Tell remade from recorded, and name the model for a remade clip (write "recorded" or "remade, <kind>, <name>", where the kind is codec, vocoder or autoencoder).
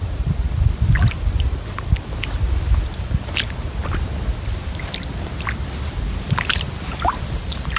recorded